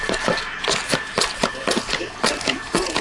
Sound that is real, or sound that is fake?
real